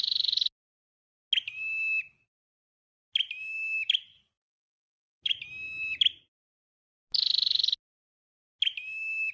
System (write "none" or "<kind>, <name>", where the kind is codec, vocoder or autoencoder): none